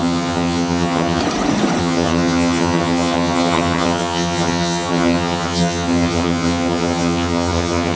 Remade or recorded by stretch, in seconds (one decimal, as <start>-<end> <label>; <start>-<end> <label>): 0.0-1.2 remade; 1.2-1.8 recorded; 1.8-8.0 remade